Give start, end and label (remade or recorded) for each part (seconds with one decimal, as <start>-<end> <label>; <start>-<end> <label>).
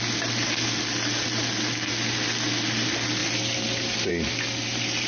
0.0-5.1 recorded